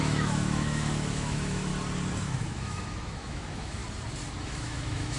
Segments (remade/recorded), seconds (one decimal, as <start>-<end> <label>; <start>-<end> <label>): 0.0-1.7 remade; 1.7-2.2 recorded; 2.2-3.8 remade; 3.8-4.4 recorded; 4.4-5.2 remade